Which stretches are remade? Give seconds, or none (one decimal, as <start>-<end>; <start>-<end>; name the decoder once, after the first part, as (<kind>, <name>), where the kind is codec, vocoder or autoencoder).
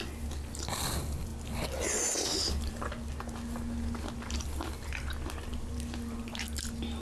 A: none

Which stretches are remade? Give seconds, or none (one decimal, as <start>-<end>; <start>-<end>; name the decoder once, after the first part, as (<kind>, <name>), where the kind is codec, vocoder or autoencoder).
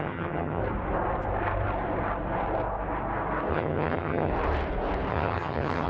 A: 0.0-0.6 (vocoder, HiFi-GAN); 3.5-4.3; 5.1-5.9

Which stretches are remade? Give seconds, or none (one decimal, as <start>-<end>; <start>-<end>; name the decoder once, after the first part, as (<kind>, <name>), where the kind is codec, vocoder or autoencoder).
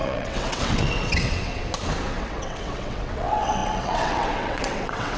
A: 0.0-1.6 (vocoder, WaveNeXt); 2.1-5.2